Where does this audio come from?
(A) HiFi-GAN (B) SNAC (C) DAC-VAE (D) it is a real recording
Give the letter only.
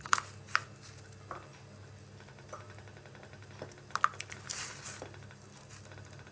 D